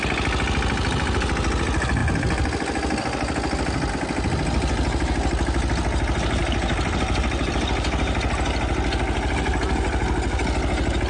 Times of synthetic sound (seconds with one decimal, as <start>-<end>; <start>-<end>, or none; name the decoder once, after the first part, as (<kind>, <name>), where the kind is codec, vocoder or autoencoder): none